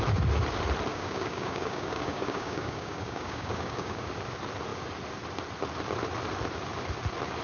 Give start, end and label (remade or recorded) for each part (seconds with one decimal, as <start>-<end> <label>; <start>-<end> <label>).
0.0-0.9 recorded; 0.9-4.1 remade; 4.1-7.4 recorded